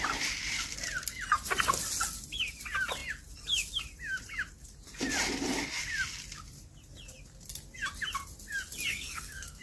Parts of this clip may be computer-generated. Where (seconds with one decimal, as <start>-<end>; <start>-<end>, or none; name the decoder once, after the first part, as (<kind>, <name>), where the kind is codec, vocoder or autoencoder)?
8.9-9.6 (codec, SNAC)